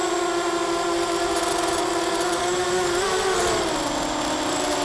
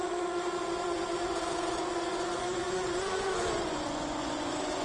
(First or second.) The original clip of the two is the first